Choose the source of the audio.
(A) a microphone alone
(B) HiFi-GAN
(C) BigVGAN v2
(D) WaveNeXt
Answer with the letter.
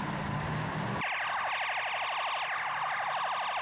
A